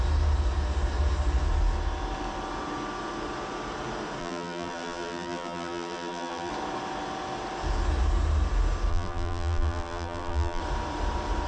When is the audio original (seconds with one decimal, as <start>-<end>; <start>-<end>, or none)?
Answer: 0.0-4.2; 6.5-8.9; 10.6-11.5